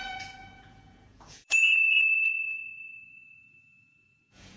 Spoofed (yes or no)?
yes